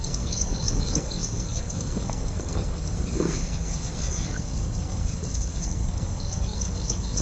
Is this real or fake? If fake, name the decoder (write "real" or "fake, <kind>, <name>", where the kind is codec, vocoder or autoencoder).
fake, codec, SNAC